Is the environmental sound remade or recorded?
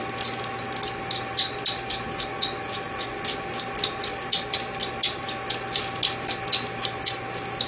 recorded